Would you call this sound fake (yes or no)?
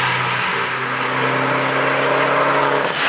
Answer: no